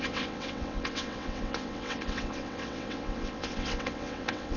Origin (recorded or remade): remade